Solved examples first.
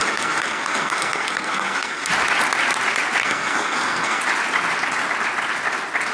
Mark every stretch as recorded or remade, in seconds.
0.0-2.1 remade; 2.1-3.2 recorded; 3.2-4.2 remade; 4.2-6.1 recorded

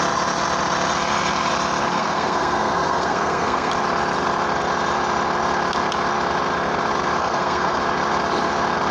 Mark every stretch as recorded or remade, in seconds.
0.0-1.9 recorded; 1.9-3.7 remade; 3.7-7.2 recorded; 7.2-7.8 remade; 7.8-8.9 recorded

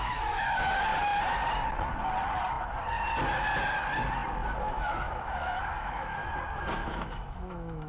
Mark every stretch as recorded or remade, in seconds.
0.0-0.9 remade; 0.9-4.6 recorded; 4.6-6.2 remade; 6.2-6.7 recorded; 6.7-7.9 remade

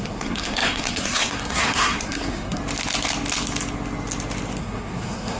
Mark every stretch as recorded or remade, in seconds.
0.0-2.6 remade; 2.6-4.6 recorded; 4.6-5.4 remade

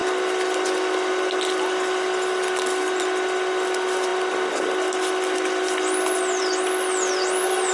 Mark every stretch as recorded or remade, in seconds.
0.0-7.7 recorded